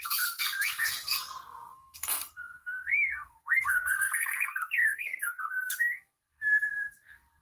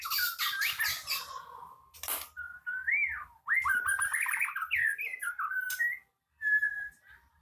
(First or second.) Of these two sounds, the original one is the second